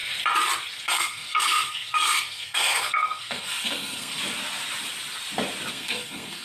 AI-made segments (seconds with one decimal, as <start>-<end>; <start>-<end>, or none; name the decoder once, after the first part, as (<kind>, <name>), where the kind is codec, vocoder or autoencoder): 0.9-4.2 (codec, SNAC); 5.7-6.4